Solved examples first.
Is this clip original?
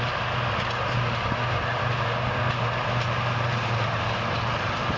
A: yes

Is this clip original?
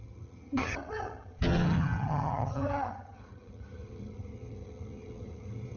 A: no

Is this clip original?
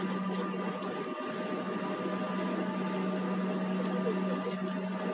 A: yes